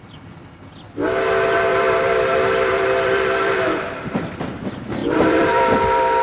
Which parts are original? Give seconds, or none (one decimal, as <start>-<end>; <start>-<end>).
0.0-1.7; 4.1-5.0; 5.8-6.2